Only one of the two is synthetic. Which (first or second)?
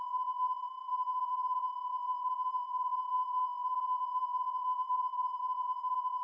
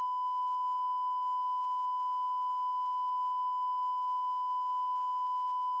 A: first